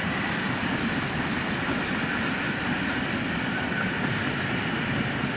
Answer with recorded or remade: recorded